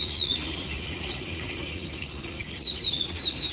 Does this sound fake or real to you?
fake